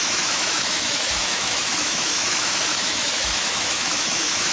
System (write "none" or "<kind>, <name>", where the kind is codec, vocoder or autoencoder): autoencoder, DAC-VAE